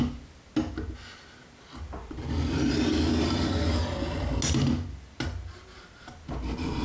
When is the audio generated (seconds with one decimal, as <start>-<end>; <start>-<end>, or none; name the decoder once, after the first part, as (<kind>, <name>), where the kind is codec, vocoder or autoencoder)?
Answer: none